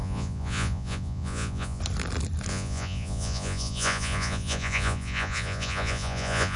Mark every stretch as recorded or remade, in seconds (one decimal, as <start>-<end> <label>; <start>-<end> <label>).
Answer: 0.0-1.8 remade; 1.8-2.5 recorded; 2.5-6.6 remade